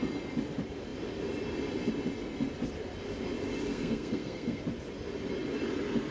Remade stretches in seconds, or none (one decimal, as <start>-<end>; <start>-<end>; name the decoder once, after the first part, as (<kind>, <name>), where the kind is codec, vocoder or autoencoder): 3.7-4.6 (codec, SNAC)